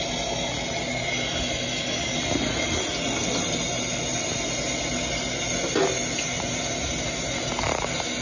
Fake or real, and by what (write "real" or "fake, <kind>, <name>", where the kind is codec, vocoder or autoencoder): real